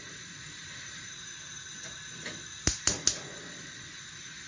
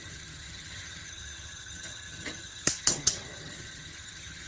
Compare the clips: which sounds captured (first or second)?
first